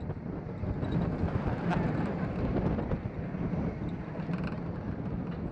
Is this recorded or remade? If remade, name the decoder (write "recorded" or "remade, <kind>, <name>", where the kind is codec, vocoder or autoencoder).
recorded